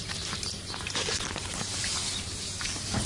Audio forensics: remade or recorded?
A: remade